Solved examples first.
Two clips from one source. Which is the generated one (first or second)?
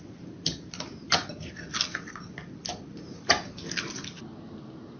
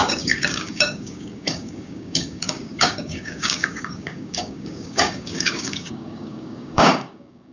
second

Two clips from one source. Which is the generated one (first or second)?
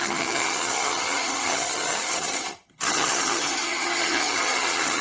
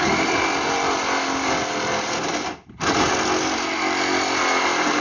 first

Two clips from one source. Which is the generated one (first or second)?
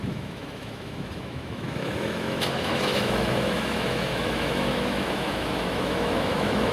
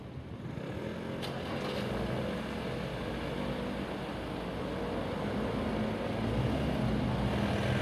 first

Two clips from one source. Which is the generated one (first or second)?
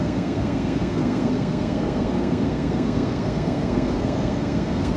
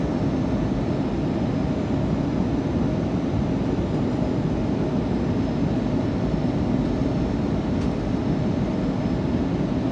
first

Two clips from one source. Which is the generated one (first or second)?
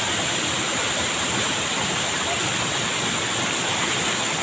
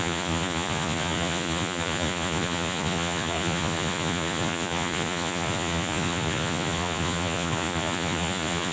second